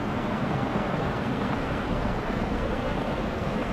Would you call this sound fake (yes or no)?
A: yes